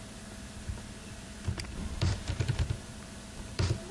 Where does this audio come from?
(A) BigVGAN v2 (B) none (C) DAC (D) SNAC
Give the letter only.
A